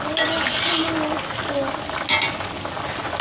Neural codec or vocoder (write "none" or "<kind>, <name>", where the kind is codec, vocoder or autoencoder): none